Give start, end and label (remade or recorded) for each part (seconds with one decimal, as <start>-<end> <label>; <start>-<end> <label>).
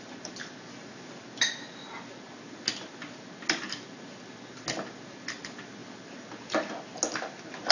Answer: 0.0-7.7 recorded